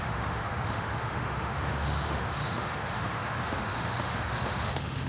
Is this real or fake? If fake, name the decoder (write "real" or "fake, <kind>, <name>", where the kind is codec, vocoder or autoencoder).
fake, autoencoder, DAC-VAE